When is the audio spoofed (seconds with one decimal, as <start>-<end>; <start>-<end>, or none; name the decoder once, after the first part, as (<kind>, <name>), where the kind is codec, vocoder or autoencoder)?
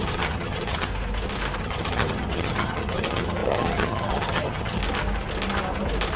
0.0-0.9 (vocoder, HiFi-GAN); 1.6-4.8